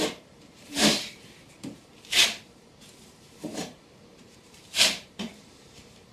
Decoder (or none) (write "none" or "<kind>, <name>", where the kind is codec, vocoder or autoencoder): vocoder, BigVGAN v2